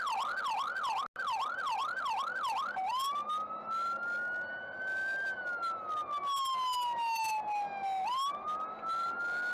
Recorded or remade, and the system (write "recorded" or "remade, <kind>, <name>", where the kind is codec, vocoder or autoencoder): recorded